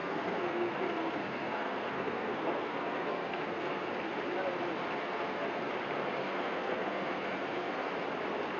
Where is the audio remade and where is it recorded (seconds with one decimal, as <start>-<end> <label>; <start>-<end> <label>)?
0.0-3.9 remade; 3.9-5.0 recorded; 5.0-5.7 remade; 5.7-6.2 recorded; 6.2-7.9 remade; 7.9-8.6 recorded